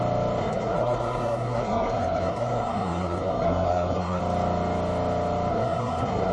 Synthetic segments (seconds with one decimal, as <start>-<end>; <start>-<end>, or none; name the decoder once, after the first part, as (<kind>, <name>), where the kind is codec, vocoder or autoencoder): 0.4-4.2 (codec, SNAC); 5.5-6.3